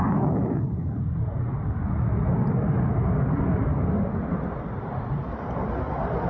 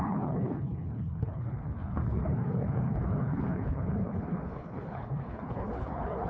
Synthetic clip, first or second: second